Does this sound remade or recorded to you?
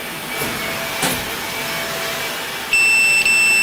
recorded